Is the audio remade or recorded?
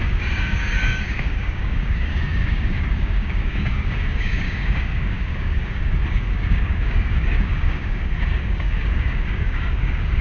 remade